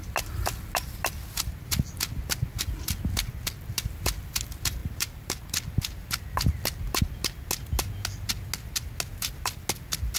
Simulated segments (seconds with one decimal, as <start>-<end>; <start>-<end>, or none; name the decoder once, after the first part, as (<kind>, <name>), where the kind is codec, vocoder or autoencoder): 4.8-5.4 (vocoder, BigVGAN v2)